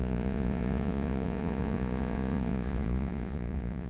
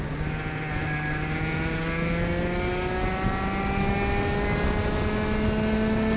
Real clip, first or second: second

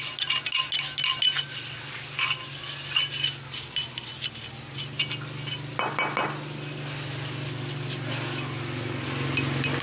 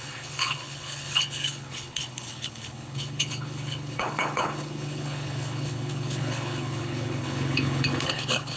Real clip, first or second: first